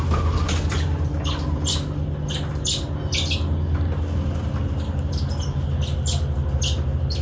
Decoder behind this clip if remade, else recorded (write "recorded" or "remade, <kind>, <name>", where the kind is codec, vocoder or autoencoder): recorded